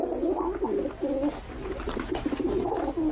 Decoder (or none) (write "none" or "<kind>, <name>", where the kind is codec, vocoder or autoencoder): none